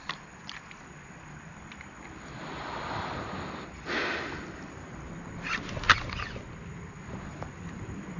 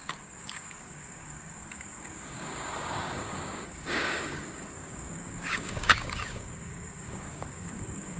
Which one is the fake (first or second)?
second